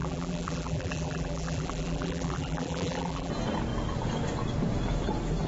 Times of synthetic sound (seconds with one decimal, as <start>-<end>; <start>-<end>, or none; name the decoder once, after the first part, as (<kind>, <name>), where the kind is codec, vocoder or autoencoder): 0.0-3.3 (vocoder, BigVGAN v2)